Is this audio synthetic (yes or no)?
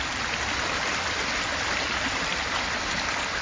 no